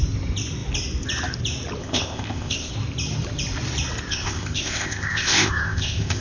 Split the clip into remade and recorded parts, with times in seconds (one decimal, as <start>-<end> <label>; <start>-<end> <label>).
0.0-1.8 recorded; 1.8-2.7 remade; 2.7-4.1 recorded; 4.1-6.2 remade